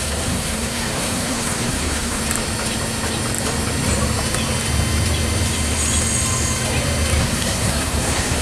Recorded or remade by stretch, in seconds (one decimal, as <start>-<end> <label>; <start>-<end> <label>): 0.0-2.2 remade; 2.2-7.2 recorded; 7.2-8.4 remade